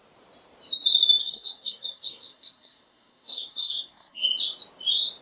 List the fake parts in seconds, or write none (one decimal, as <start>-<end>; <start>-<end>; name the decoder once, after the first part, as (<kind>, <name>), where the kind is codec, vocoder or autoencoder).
1.2-4.3 (codec, SNAC)